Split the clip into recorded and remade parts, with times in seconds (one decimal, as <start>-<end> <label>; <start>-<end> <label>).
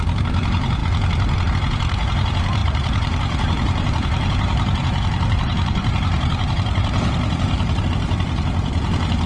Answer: 0.0-2.6 recorded; 2.6-7.8 remade; 7.8-9.3 recorded